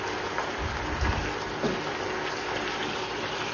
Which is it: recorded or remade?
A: recorded